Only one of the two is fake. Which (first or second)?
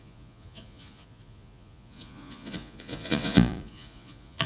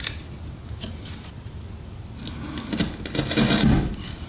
first